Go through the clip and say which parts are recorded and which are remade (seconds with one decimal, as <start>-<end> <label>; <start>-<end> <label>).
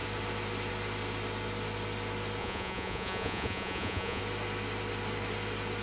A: 0.0-2.4 recorded; 2.4-4.2 remade; 4.2-5.8 recorded